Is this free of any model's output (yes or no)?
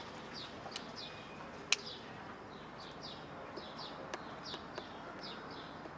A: yes